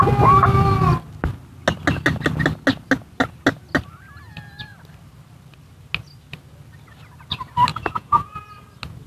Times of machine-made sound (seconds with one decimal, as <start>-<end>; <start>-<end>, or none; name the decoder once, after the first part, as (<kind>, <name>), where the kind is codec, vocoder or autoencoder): 7.7-8.5 (vocoder, Vocos)